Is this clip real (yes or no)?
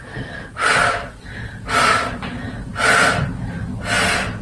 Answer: yes